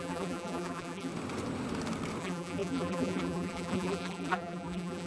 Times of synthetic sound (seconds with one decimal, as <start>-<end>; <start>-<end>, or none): 0.0-1.1; 2.2-5.1